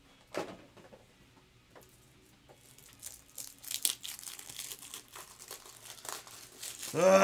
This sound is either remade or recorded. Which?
recorded